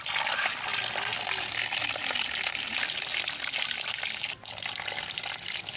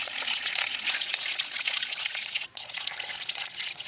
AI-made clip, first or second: second